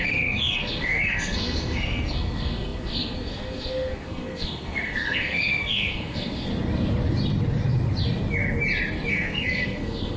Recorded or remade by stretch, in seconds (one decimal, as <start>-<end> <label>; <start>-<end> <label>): 0.0-6.5 remade; 6.5-9.1 recorded; 9.1-10.2 remade